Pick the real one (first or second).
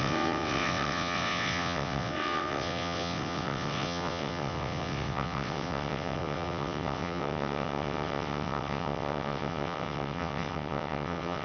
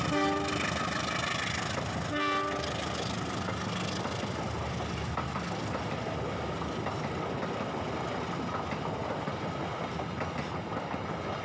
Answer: second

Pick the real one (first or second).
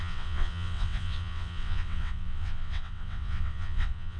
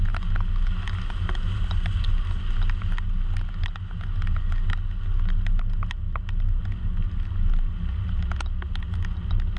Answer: second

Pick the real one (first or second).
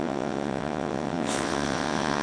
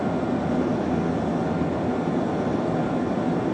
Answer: second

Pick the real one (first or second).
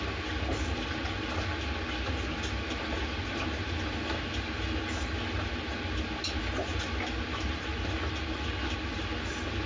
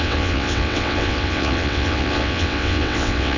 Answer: first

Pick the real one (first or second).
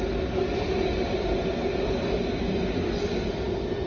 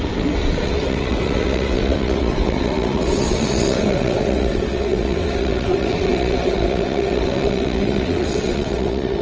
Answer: first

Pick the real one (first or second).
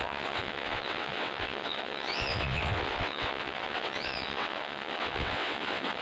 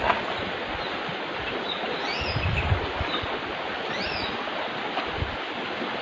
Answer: second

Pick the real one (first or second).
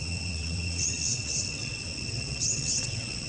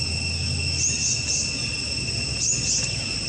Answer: second